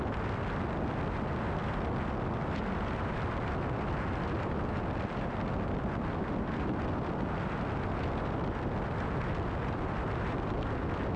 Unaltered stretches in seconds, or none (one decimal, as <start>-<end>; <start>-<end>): 0.0-11.2